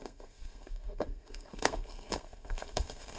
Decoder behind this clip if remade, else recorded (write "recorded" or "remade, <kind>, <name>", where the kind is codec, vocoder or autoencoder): remade, codec, SNAC